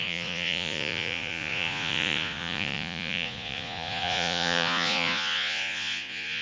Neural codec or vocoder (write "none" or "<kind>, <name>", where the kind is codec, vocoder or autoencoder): vocoder, Vocos